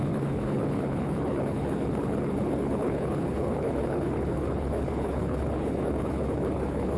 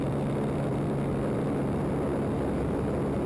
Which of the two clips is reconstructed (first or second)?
first